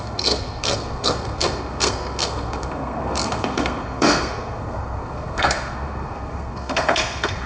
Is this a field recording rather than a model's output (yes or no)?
no